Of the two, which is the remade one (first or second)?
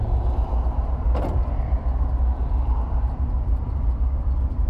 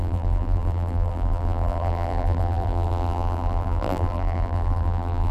second